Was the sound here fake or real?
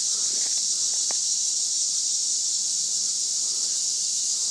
real